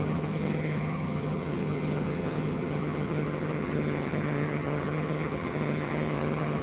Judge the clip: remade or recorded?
remade